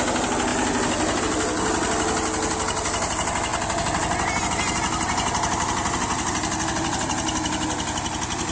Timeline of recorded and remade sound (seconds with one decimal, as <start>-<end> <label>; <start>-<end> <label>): 0.0-8.5 recorded